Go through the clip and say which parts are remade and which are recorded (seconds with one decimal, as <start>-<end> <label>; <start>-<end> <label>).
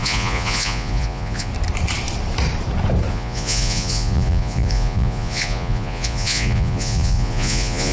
0.0-1.5 remade; 1.5-3.1 recorded; 3.1-7.9 remade